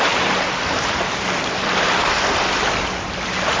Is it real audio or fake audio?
real